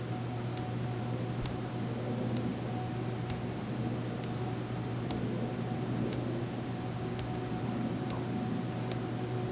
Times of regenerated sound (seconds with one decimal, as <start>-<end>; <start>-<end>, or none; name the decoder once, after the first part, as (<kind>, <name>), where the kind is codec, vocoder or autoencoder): 0.0-2.5 (vocoder, BigVGAN v2); 7.6-9.5